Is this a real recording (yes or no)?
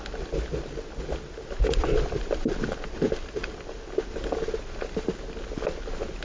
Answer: yes